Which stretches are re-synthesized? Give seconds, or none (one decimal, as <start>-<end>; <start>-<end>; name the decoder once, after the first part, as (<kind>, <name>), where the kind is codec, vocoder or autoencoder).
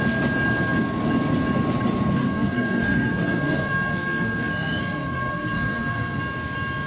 2.2-6.2 (codec, SNAC)